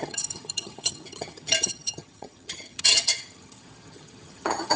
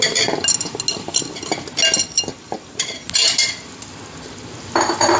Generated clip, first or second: first